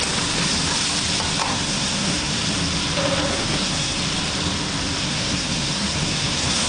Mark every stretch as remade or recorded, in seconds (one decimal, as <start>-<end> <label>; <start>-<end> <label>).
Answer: 0.0-1.4 recorded; 1.4-2.3 remade; 2.3-3.3 recorded; 3.3-4.0 remade; 4.0-5.0 recorded; 5.0-6.7 remade